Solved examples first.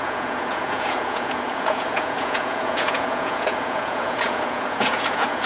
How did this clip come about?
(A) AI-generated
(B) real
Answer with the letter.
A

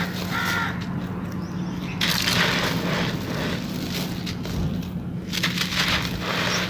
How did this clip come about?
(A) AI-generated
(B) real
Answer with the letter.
B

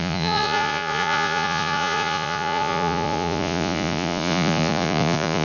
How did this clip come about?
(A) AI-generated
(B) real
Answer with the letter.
A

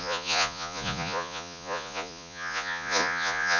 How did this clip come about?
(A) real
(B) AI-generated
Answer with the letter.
B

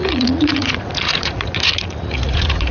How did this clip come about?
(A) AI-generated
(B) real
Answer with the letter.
A